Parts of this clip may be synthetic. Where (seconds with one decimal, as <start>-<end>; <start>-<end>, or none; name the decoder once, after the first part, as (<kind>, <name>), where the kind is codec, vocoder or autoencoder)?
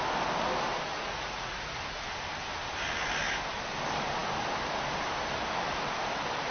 0.9-1.5 (vocoder, Vocos)